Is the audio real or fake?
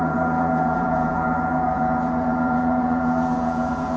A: fake